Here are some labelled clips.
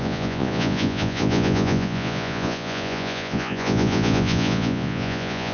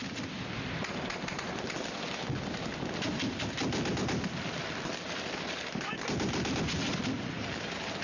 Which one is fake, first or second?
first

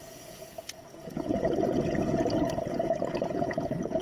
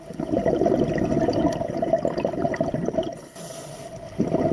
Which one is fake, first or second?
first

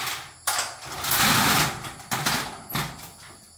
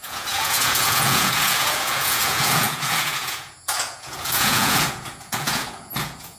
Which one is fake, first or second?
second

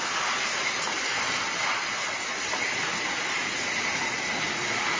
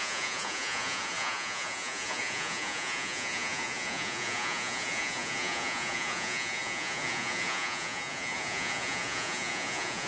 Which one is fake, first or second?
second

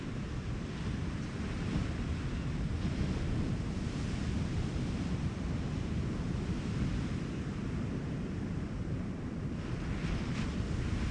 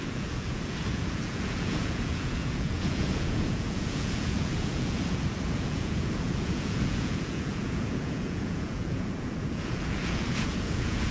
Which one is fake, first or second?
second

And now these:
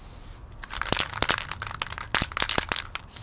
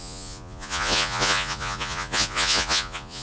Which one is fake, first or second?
second